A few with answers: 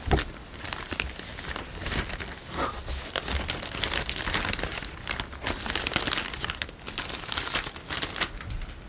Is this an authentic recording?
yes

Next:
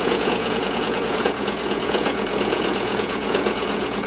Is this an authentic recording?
no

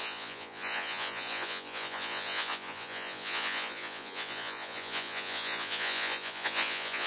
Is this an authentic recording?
no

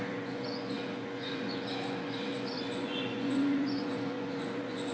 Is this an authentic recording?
no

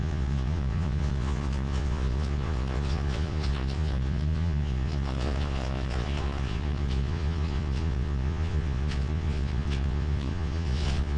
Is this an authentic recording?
no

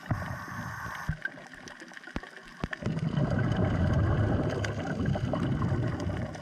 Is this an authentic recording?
yes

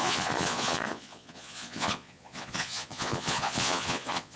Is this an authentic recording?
no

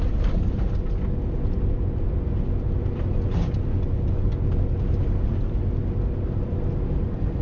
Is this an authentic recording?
yes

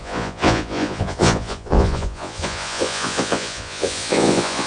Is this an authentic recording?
no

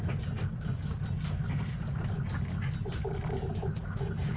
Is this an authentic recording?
yes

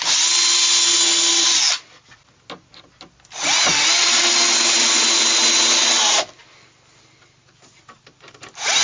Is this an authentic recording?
yes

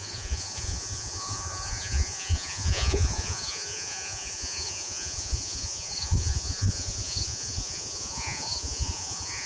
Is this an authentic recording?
no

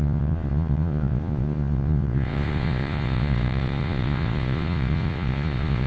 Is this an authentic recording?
no